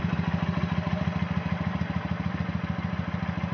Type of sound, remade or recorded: recorded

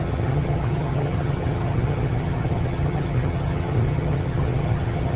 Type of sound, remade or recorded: remade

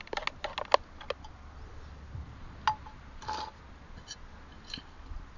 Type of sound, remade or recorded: recorded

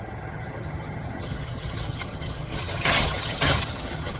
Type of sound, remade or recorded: remade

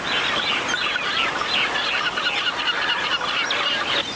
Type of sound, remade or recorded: recorded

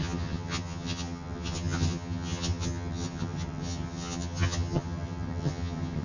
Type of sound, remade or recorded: remade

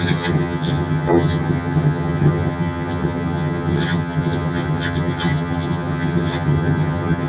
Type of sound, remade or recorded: remade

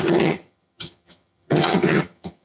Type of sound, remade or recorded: remade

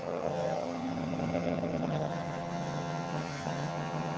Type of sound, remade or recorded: remade